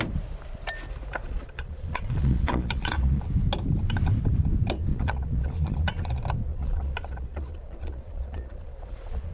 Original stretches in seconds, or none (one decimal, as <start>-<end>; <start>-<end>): 0.0-1.2; 3.2-4.9; 6.1-6.5